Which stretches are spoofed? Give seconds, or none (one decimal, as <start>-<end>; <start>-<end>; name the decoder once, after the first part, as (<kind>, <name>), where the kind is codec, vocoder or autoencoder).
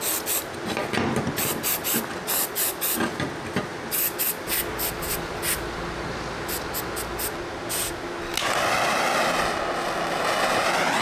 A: none